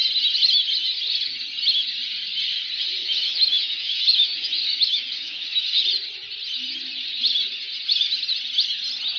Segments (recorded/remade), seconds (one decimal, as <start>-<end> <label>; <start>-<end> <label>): 0.0-3.0 recorded; 3.0-5.8 remade; 5.8-9.2 recorded